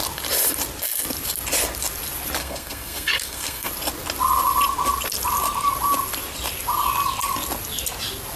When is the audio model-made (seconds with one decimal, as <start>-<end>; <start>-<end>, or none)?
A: 2.4-3.7